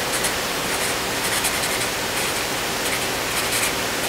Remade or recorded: recorded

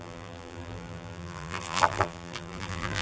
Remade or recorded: remade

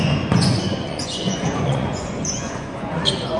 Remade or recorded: remade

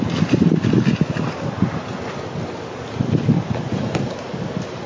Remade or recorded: recorded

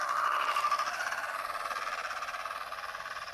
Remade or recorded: recorded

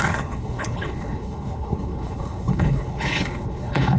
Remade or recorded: remade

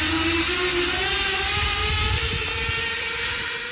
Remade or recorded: recorded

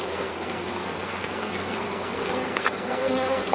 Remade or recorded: remade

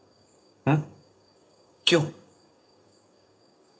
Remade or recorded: remade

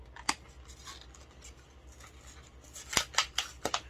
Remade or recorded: recorded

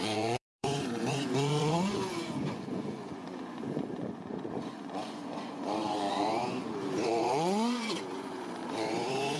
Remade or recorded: remade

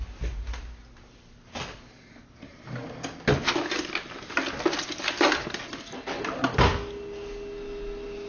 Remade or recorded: recorded